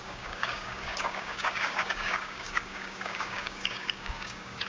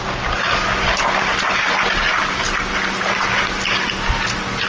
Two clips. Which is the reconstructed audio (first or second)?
first